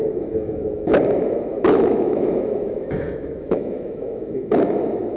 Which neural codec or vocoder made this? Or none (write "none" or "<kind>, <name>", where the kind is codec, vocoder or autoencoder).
autoencoder, DAC-VAE